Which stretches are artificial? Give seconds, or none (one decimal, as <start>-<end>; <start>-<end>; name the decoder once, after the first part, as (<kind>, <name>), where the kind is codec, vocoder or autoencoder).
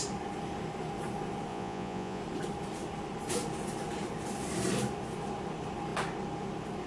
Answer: 1.5-2.2 (vocoder, Vocos)